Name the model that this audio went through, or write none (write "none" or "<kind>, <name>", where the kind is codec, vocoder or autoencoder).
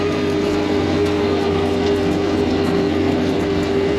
codec, SNAC